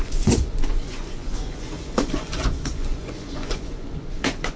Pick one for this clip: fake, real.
fake